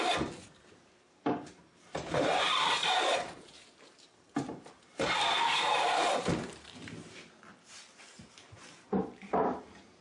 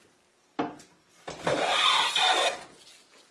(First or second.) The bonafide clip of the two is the second